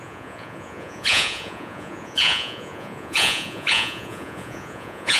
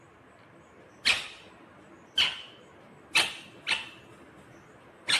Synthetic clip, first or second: first